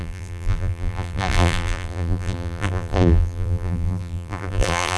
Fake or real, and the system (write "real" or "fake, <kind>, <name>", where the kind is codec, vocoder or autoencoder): fake, vocoder, BigVGAN v2